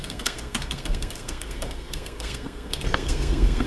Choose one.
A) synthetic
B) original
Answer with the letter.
A